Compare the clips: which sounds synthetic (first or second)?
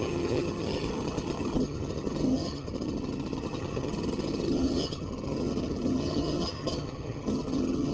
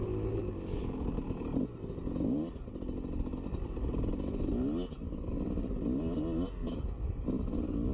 first